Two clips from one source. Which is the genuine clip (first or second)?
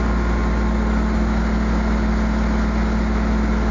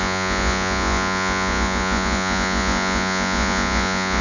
first